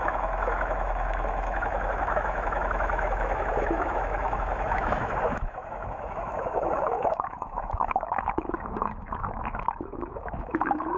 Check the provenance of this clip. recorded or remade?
remade